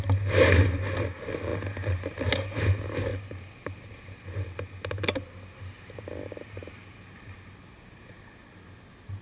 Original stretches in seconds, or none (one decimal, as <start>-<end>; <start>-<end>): 0.0-9.2